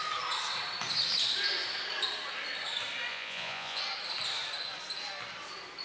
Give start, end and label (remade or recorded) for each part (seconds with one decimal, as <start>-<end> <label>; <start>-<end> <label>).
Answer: 0.0-3.1 recorded; 3.1-3.8 remade; 3.8-5.8 recorded